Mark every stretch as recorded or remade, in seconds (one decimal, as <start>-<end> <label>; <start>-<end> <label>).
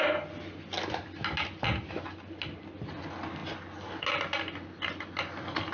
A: 0.0-5.7 recorded